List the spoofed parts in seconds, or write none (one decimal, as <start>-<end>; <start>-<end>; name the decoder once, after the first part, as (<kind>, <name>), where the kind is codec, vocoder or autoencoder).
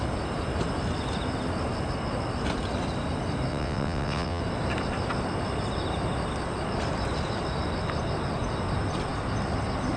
3.5-4.4 (vocoder, WaveNeXt)